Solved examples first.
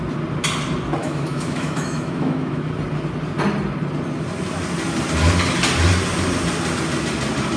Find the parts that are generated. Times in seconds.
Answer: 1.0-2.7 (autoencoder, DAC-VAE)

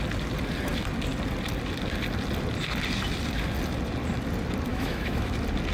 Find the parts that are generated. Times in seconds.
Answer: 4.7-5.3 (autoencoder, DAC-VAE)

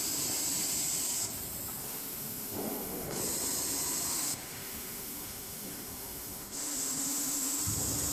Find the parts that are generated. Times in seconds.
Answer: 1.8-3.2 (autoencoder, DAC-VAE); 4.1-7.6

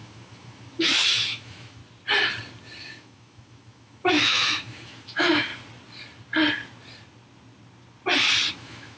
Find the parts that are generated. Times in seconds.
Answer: 0.0-1.8 (autoencoder, DAC-VAE); 2.8-5.5; 8.5-9.0